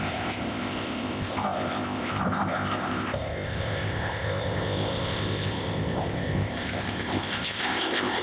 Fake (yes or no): yes